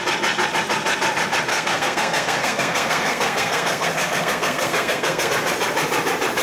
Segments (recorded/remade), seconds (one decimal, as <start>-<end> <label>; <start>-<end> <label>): 0.0-1.5 recorded; 1.5-5.3 remade; 5.3-6.4 recorded